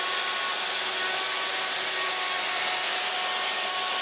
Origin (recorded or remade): recorded